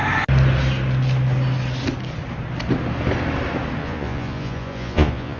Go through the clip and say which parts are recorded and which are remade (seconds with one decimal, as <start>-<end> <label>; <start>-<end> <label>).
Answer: 0.0-3.8 recorded; 3.8-5.4 remade